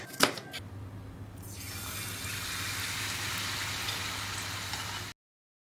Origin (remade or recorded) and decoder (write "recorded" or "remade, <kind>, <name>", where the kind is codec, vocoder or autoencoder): recorded